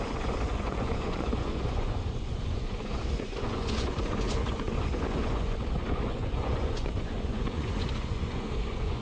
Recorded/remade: remade